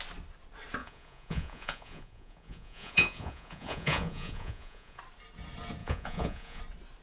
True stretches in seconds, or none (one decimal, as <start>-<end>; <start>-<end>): 0.0-0.8; 5.0-5.8; 6.6-7.0